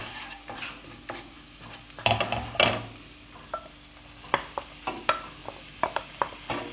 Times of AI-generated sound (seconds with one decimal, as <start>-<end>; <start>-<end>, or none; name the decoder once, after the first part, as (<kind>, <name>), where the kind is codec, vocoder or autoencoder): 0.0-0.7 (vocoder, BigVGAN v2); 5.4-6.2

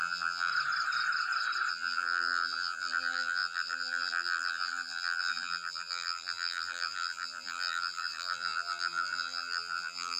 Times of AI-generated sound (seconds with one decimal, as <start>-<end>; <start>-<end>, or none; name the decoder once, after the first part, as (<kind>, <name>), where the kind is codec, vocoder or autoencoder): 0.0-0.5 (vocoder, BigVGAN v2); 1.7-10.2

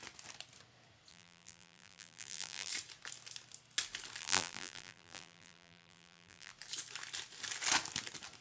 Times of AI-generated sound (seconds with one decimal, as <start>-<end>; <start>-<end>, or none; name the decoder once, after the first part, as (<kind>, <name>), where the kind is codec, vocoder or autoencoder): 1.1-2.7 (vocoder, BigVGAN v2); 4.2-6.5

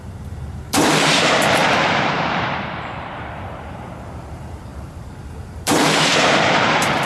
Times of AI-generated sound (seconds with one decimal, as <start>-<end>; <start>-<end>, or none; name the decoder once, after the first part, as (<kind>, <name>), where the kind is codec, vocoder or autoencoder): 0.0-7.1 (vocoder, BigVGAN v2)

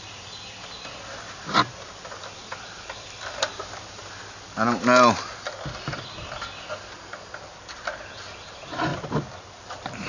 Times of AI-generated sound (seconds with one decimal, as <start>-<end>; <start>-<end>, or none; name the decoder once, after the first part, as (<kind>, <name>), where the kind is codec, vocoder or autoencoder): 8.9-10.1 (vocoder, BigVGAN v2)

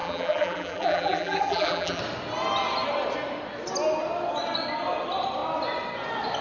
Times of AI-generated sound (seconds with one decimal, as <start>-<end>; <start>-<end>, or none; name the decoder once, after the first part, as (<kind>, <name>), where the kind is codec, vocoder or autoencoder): 0.0-2.0 (vocoder, BigVGAN v2)